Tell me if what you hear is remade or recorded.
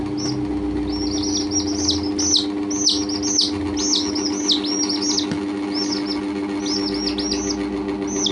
recorded